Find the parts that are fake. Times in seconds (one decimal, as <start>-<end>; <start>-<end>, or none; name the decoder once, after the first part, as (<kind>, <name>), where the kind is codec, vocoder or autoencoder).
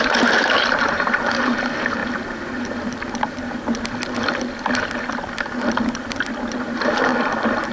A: 0.0-2.0 (vocoder, BigVGAN v2); 6.6-7.1